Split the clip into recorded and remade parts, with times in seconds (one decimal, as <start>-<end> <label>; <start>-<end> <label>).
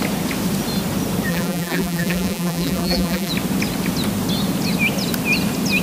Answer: 0.0-1.3 recorded; 1.3-3.3 remade; 3.3-5.8 recorded